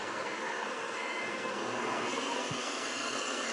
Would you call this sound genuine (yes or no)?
no